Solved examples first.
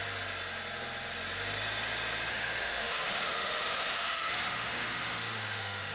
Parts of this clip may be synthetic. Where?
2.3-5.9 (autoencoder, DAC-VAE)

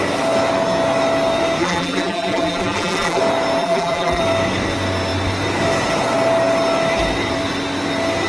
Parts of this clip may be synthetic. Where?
1.6-3.2 (vocoder, BigVGAN v2); 3.6-4.2

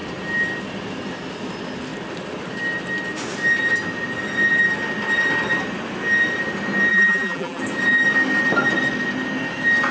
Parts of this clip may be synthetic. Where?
6.9-7.6 (vocoder, BigVGAN v2)